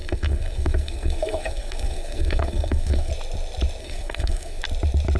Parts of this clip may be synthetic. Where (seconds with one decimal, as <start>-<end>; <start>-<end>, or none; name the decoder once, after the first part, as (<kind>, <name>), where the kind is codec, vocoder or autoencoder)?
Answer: 0.0-3.1 (codec, SNAC); 3.8-4.6